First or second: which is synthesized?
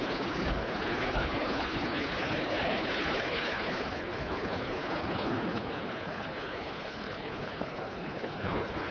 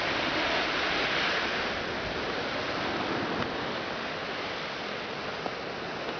first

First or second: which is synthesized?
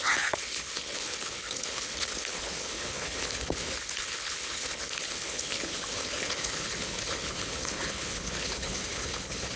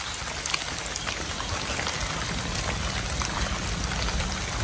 first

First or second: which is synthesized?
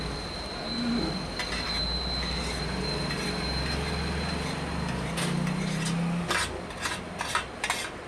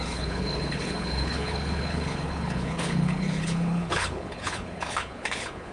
second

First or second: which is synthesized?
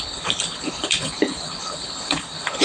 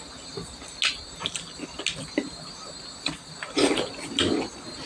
first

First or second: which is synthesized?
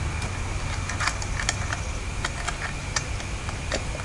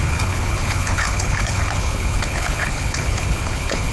second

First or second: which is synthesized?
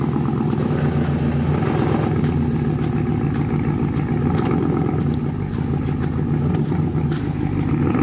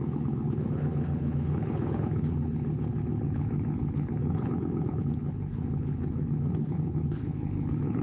second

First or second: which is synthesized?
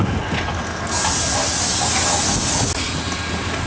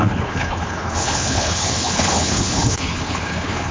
second